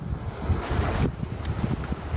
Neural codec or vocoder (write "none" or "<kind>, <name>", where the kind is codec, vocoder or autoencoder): none